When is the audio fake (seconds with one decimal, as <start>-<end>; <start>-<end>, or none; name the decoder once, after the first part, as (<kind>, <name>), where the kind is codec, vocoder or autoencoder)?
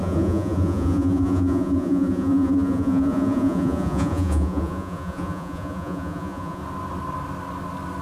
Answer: 0.0-6.6 (vocoder, Vocos)